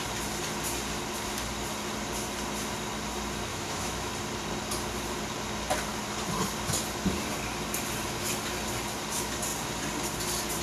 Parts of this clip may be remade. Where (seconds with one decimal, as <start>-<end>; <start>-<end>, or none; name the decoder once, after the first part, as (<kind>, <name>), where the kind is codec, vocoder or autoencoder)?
3.5-4.1 (autoencoder, DAC-VAE)